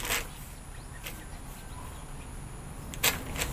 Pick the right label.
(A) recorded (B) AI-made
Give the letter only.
A